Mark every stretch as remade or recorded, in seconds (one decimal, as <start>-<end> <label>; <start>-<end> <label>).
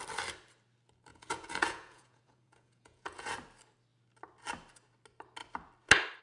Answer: 0.0-1.1 recorded; 1.1-3.3 remade; 3.3-6.2 recorded